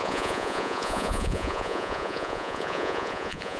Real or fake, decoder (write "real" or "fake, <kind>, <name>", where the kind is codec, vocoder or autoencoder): fake, vocoder, Vocos